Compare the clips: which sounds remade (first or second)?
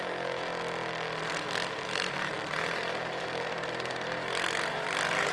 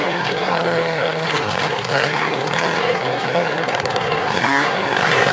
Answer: second